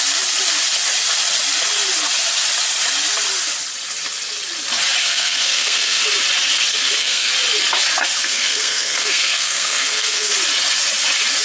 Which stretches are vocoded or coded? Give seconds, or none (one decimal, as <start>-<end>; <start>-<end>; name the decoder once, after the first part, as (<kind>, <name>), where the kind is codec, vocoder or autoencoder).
5.0-6.0 (codec, SNAC); 6.7-7.3; 8.2-10.3